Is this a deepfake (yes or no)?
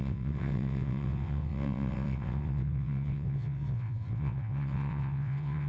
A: yes